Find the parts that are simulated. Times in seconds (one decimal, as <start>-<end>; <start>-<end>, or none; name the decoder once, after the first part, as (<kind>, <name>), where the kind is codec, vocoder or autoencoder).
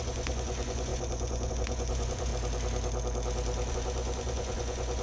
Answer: 0.0-2.3 (vocoder, Vocos); 3.7-5.0